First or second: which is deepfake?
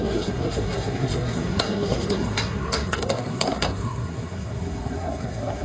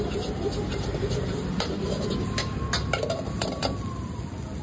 first